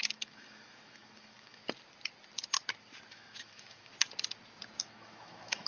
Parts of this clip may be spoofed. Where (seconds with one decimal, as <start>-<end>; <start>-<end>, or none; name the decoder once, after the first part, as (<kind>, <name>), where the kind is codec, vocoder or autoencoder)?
0.0-1.6 (autoencoder, DAC-VAE); 3.1-3.9; 4.8-5.7